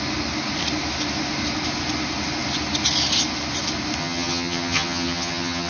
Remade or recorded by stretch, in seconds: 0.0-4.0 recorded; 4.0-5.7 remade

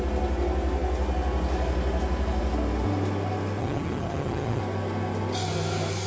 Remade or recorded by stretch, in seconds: 0.0-3.6 recorded; 3.6-4.6 remade; 4.6-6.1 recorded

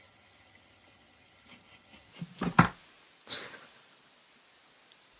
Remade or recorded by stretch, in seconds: 0.0-2.1 remade; 2.1-5.2 recorded